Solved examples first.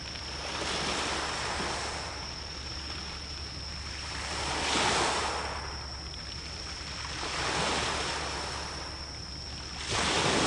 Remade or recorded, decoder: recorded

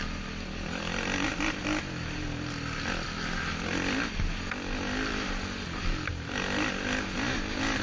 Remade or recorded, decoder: recorded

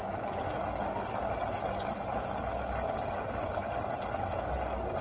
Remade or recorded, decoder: recorded